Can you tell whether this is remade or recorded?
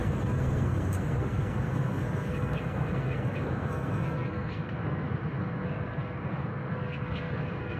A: remade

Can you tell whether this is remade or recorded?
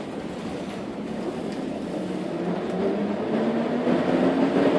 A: recorded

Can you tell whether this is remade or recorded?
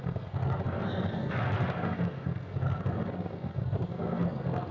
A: remade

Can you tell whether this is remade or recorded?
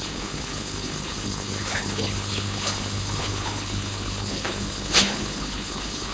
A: remade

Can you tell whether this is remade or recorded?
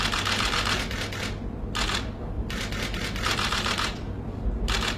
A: recorded